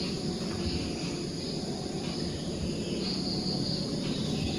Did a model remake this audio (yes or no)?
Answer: no